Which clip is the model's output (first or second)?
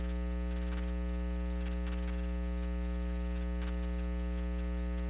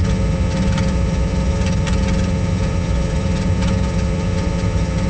second